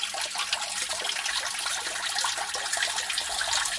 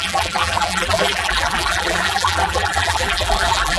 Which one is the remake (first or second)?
second